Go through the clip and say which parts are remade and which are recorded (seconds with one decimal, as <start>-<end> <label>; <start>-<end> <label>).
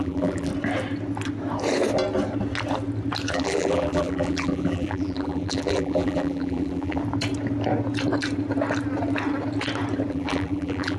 0.0-0.5 remade; 0.5-3.3 recorded; 3.3-7.0 remade; 7.0-10.1 recorded; 10.1-11.0 remade